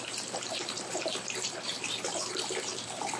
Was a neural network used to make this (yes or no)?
yes